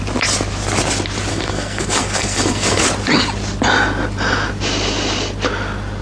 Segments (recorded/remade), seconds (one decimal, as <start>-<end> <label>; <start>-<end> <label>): 0.0-1.3 recorded; 1.3-2.8 remade; 2.8-6.0 recorded